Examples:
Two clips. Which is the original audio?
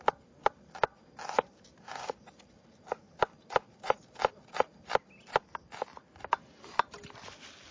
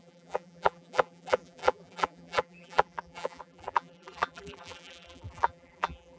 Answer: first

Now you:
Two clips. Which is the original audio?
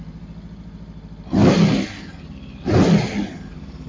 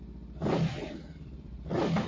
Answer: first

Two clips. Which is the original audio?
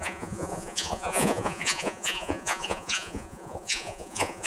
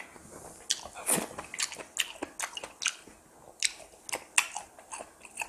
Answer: second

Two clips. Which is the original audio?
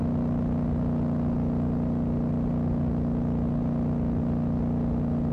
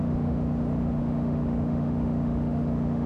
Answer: first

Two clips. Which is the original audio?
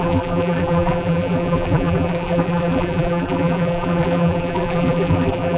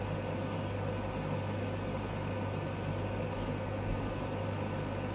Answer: second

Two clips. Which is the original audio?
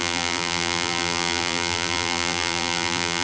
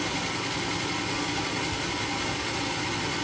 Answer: second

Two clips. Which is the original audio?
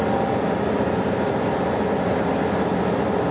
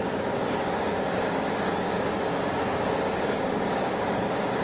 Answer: first